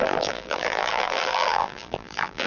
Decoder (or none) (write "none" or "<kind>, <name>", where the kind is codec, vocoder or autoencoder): vocoder, BigVGAN v2